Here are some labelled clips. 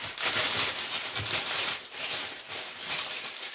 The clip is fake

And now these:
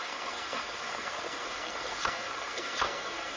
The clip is fake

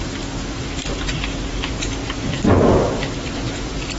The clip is real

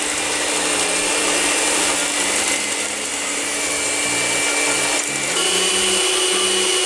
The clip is real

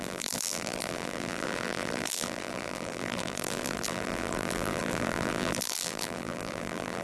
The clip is fake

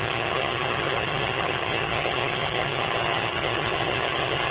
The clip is fake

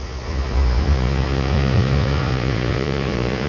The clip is fake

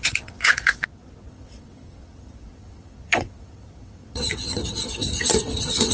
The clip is fake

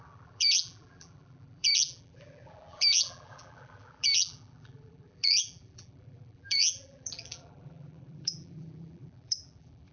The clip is fake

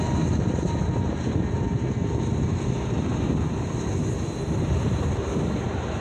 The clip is real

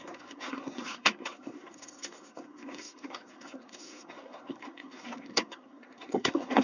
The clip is fake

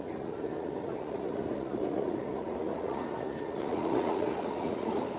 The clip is fake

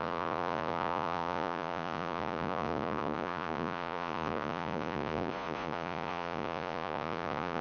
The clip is fake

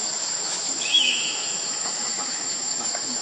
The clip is fake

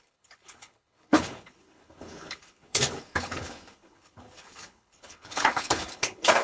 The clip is fake